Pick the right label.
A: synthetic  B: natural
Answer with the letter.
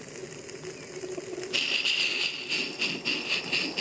B